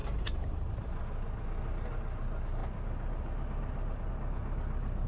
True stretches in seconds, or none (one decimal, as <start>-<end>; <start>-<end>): 1.0-5.1